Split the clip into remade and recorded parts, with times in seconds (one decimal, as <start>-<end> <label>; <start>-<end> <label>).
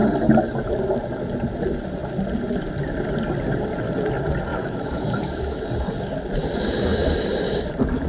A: 0.0-4.5 recorded; 4.5-5.6 remade; 5.6-8.1 recorded